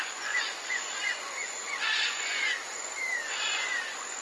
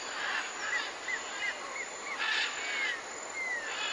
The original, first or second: second